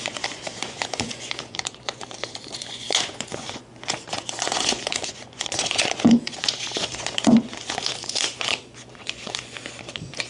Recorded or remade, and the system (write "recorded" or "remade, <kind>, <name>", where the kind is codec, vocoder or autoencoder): remade, vocoder, Vocos